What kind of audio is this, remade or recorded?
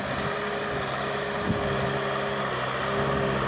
recorded